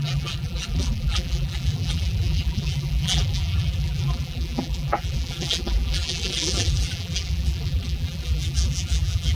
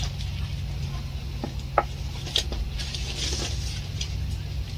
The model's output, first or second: first